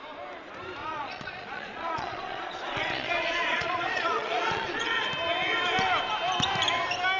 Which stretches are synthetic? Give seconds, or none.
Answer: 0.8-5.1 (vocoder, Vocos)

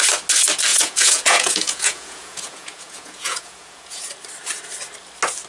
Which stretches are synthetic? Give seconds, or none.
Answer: 0.7-4.0 (vocoder, Vocos)

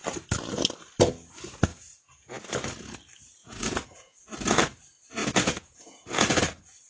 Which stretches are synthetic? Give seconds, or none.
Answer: 1.7-2.5 (vocoder, Vocos); 3.4-4.6; 5.2-6.4